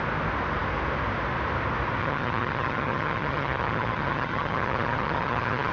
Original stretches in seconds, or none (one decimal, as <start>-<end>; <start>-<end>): 0.0-2.0